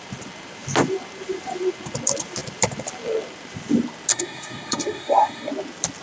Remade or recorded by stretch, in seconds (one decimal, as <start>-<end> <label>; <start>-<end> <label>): 0.0-4.1 recorded; 4.1-5.5 remade; 5.5-6.0 recorded